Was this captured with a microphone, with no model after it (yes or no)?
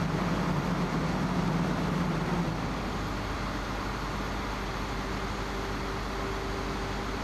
yes